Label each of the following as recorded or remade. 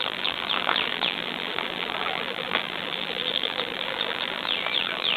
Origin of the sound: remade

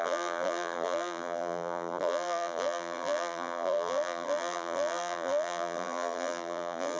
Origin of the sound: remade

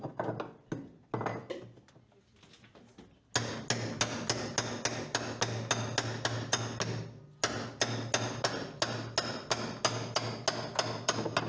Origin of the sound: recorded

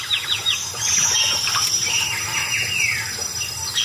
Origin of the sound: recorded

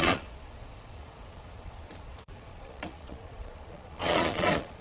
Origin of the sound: remade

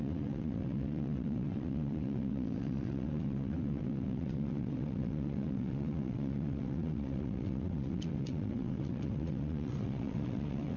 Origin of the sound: remade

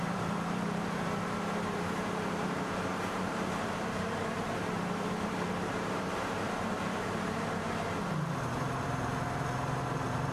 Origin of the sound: remade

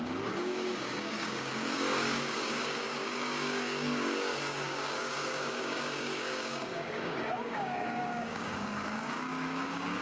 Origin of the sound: remade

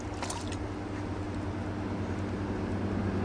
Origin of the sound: recorded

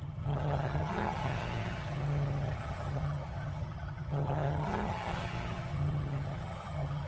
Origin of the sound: remade